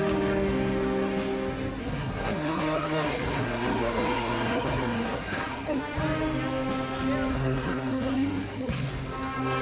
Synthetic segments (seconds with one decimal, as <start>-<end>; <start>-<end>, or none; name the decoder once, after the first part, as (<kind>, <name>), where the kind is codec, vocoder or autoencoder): 1.8-5.8 (codec, SNAC); 7.3-8.9